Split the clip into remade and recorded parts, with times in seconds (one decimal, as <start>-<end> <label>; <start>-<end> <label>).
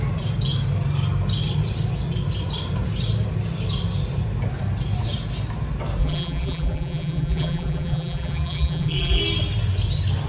0.0-6.0 recorded; 6.0-9.2 remade; 9.2-10.3 recorded